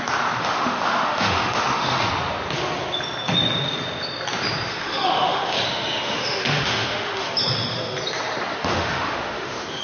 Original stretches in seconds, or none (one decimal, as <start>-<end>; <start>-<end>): 0.0-0.4; 2.1-4.7; 7.3-8.5